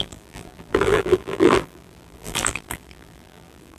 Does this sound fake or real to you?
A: fake